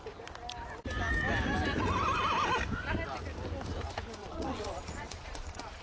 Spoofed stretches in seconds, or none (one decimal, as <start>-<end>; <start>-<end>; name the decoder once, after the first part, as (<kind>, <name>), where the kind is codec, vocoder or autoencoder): 4.2-5.8 (vocoder, Vocos)